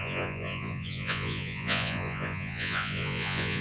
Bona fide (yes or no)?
no